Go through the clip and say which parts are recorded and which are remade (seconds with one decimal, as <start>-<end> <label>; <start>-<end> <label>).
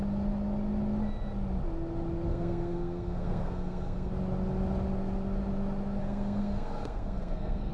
0.0-2.3 recorded; 2.3-4.1 remade; 4.1-6.0 recorded; 6.0-7.7 remade